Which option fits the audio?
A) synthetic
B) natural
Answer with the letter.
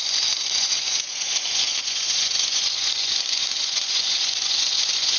A